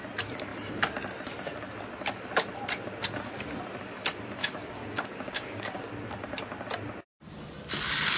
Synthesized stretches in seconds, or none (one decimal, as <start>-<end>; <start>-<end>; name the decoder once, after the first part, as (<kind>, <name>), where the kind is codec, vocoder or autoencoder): 4.4-5.8 (codec, DAC)